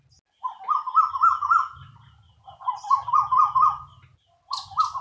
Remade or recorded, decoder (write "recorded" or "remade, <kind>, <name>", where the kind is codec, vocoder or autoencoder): recorded